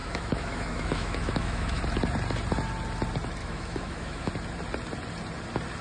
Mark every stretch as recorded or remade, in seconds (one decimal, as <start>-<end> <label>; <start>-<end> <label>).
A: 0.0-1.8 remade; 1.8-3.4 recorded; 3.4-4.3 remade; 4.3-5.8 recorded